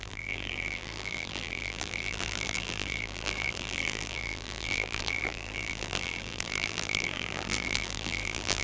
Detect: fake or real fake